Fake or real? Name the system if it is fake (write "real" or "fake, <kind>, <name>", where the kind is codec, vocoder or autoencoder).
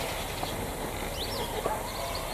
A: real